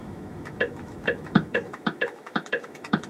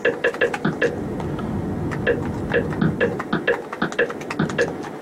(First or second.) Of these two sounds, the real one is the second